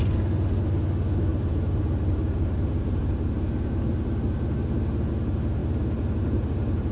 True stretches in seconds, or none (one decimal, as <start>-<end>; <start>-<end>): 0.0-1.3; 3.0-5.6